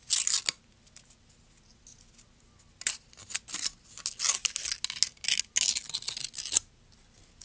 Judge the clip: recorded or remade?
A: recorded